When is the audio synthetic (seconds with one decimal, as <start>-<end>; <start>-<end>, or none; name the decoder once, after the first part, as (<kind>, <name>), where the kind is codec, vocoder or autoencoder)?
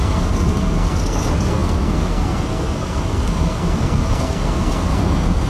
0.0-5.5 (codec, SNAC)